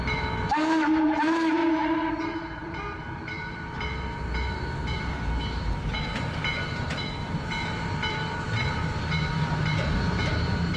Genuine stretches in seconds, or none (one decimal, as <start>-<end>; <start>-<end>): 1.6-2.1